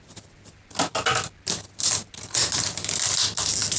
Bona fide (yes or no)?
yes